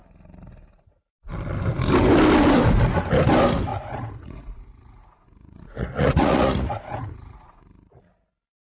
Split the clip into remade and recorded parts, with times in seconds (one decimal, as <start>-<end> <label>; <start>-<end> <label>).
0.0-3.7 recorded; 3.7-7.6 remade; 7.6-8.8 recorded